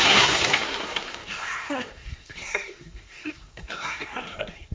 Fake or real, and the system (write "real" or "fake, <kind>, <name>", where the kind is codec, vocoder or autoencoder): fake, codec, SNAC